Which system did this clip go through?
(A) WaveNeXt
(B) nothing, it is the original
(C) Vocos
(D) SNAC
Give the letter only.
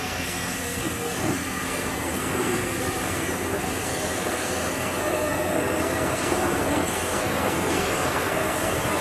D